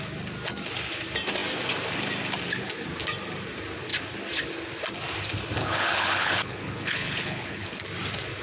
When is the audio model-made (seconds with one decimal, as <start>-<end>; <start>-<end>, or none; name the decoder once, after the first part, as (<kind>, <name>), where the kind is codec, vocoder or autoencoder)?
5.6-7.8 (codec, HILCodec)